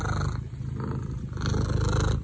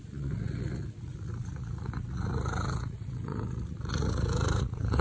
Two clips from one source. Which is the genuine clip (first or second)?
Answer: first